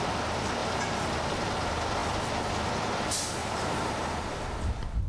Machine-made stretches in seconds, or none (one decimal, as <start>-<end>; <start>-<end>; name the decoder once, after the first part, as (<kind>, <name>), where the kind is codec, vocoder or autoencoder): 0.6-1.3 (vocoder, BigVGAN v2); 3.4-4.1

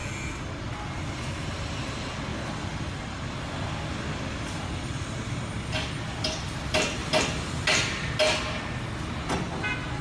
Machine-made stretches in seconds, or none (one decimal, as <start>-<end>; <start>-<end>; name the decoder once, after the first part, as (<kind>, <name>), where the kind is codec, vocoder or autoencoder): none